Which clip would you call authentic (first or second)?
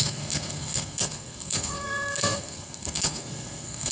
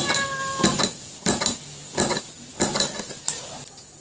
second